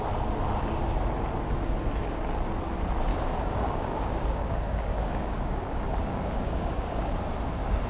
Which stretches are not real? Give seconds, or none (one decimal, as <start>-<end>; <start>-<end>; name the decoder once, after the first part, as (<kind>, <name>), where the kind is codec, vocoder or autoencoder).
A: 3.1-7.1 (codec, DAC)